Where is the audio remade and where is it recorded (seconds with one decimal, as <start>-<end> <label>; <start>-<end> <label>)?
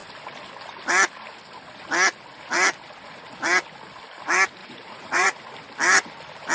0.0-4.6 recorded; 4.6-5.4 remade; 5.4-6.5 recorded